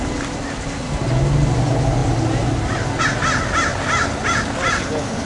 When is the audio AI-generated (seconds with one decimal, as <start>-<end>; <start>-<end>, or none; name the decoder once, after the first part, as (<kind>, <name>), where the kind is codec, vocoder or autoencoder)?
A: none